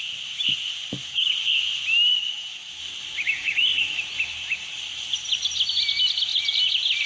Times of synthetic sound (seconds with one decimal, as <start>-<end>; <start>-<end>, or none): 1.0-1.5; 2.1-2.8; 3.4-4.1